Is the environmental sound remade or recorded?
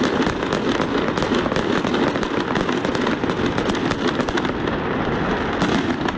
recorded